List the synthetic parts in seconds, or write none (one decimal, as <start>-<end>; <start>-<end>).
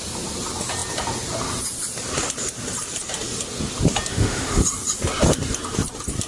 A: 4.1-4.6